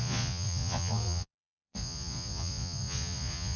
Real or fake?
fake